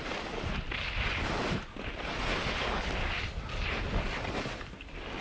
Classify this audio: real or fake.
real